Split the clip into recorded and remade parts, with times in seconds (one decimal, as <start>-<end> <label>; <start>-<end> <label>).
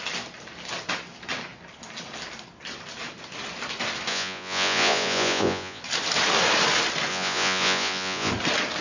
0.0-4.1 recorded; 4.1-5.8 remade; 5.8-7.1 recorded; 7.1-8.3 remade; 8.3-8.8 recorded